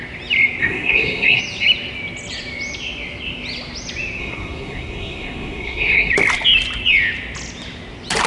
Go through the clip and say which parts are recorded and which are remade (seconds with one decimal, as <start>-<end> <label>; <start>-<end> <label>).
0.0-0.6 recorded; 0.6-1.4 remade; 1.4-4.2 recorded; 4.2-6.1 remade; 6.1-8.3 recorded